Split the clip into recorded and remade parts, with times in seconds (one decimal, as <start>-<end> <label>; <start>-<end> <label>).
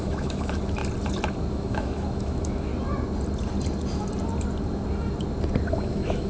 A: 0.0-0.8 remade; 0.8-1.5 recorded; 1.5-2.7 remade; 2.7-5.7 recorded; 5.7-6.3 remade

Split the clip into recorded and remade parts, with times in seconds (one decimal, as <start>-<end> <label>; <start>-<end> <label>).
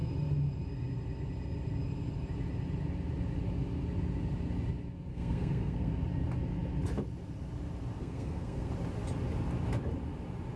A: 0.0-5.1 recorded; 5.1-5.9 remade; 5.9-8.0 recorded; 8.0-8.7 remade; 8.7-10.6 recorded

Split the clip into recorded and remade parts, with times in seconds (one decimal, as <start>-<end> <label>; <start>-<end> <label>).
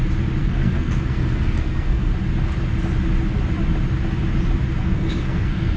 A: 0.0-0.4 recorded; 0.4-2.1 remade; 2.1-4.8 recorded; 4.8-5.8 remade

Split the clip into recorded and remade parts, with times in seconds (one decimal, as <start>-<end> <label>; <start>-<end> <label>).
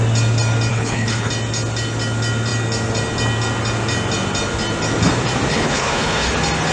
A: 0.0-0.7 recorded; 0.7-1.3 remade; 1.3-5.5 recorded; 5.5-6.3 remade; 6.3-6.7 recorded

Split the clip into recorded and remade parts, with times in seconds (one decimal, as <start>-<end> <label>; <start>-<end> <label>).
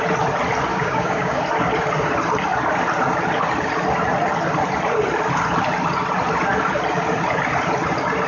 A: 0.0-0.7 recorded; 0.7-1.4 remade; 1.4-8.3 recorded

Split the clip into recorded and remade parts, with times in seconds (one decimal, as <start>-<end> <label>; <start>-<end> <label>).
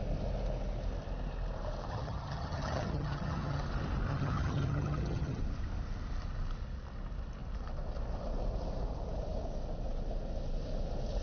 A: 0.0-1.9 recorded; 1.9-3.6 remade; 3.6-4.1 recorded; 4.1-5.4 remade; 5.4-11.2 recorded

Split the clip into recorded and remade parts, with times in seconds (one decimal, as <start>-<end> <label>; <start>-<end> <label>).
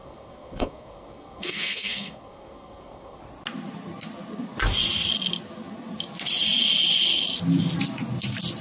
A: 0.0-3.2 remade; 3.2-8.6 recorded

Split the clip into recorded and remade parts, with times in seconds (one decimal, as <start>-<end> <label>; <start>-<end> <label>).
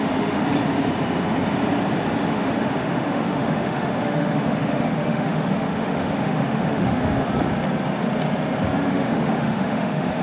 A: 0.0-0.4 remade; 0.4-2.3 recorded; 2.3-7.3 remade; 7.3-8.9 recorded; 8.9-10.2 remade